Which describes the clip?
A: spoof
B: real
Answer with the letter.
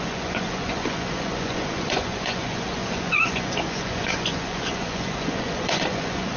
A